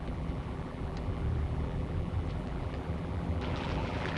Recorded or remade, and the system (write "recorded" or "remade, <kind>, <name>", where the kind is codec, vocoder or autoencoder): remade, vocoder, BigVGAN v2